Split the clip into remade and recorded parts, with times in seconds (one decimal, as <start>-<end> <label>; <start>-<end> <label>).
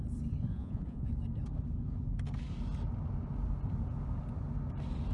0.0-0.5 recorded; 0.5-1.1 remade; 1.1-5.1 recorded